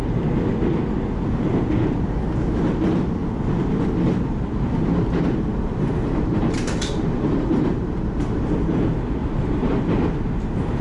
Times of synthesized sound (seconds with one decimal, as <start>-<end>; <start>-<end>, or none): 5.5-8.5; 9.2-9.7